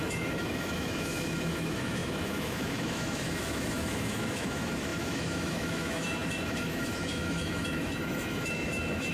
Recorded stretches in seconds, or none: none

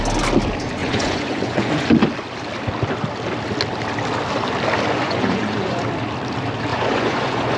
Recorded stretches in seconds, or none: 0.0-0.8; 1.9-5.0; 5.8-6.7

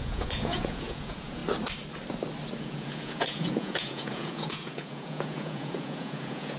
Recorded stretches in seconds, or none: 1.4-2.6

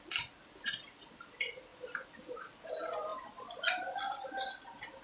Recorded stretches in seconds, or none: 1.7-2.7

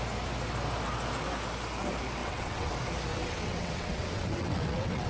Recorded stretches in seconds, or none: 0.0-2.2; 2.7-3.1